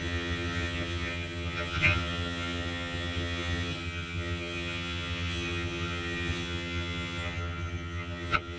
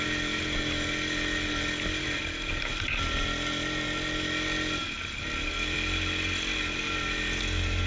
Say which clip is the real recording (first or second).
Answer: second